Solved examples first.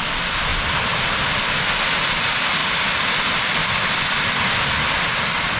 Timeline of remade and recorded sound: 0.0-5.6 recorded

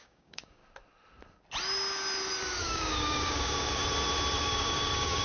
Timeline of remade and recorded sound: 0.0-0.6 remade; 0.6-2.6 recorded; 2.6-3.8 remade; 3.8-4.4 recorded; 4.4-5.2 remade

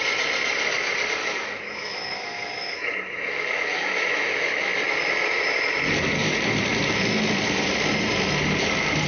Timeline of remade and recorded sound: 0.0-1.2 recorded; 1.2-4.8 remade; 4.8-9.1 recorded

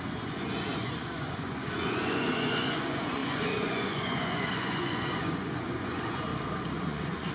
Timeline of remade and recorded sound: 0.0-6.3 remade; 6.3-6.8 recorded; 6.8-7.3 remade